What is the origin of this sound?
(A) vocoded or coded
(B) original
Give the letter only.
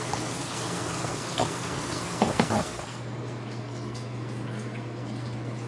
A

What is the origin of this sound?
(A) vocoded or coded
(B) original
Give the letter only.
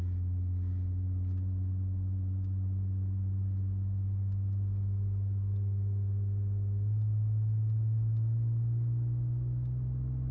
B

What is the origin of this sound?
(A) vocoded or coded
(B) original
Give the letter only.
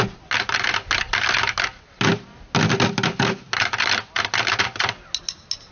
B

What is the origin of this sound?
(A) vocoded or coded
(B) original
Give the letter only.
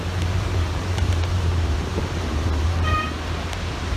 A